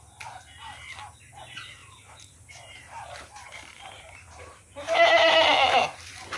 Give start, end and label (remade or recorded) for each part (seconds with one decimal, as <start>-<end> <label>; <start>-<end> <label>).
0.0-1.8 recorded; 1.8-5.5 remade; 5.5-6.4 recorded